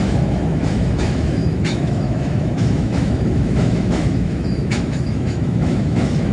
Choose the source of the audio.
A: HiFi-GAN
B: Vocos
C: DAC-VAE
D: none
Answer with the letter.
C